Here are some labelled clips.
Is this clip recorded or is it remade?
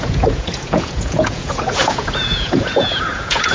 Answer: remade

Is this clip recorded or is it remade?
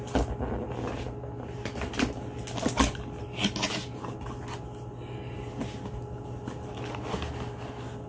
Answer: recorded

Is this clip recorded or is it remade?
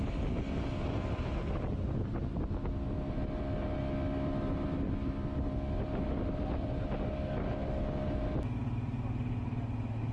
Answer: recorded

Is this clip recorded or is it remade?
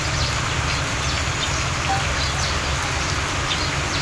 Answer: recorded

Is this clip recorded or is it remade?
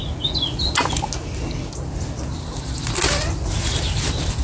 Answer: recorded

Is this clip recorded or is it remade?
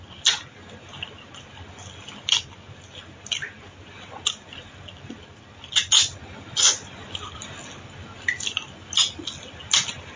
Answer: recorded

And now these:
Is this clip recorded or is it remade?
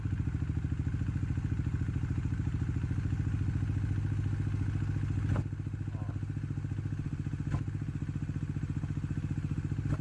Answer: recorded